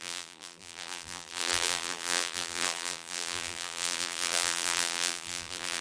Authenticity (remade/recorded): remade